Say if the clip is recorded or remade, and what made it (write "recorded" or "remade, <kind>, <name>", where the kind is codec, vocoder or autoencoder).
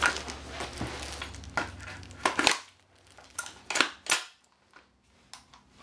recorded